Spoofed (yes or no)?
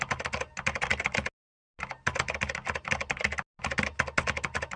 no